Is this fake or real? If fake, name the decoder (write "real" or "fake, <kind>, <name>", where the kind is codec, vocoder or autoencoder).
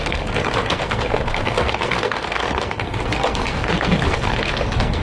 fake, codec, SNAC